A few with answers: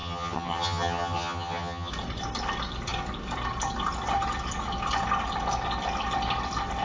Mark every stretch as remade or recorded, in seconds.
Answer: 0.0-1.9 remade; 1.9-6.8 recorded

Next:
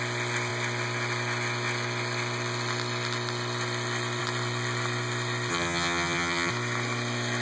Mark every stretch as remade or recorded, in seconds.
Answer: 0.0-5.5 recorded; 5.5-6.5 remade; 6.5-7.4 recorded

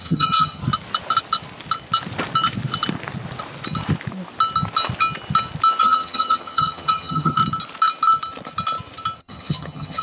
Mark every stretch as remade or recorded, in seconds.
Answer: 0.0-0.6 remade; 0.6-5.8 recorded; 5.8-7.4 remade; 7.4-9.2 recorded; 9.2-10.0 remade

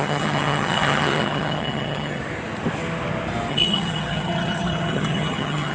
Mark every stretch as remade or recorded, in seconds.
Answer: 0.0-2.2 remade; 2.2-3.5 recorded; 3.5-5.7 remade

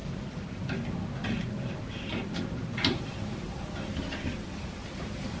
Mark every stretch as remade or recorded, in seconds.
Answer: 0.0-5.4 recorded

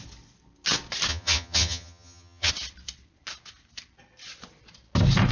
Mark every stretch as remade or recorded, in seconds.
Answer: 0.0-1.1 recorded; 1.1-2.5 remade; 2.5-5.3 recorded

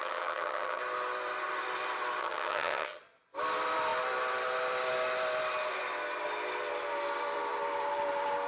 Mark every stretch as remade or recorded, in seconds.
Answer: 0.0-0.8 remade; 0.8-2.2 recorded; 2.2-3.0 remade; 3.0-8.5 recorded

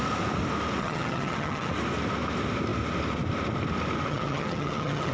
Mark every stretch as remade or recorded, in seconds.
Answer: 0.0-0.8 recorded; 0.8-1.7 remade; 1.7-4.1 recorded; 4.1-5.1 remade